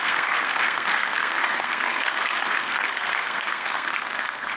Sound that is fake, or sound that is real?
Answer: fake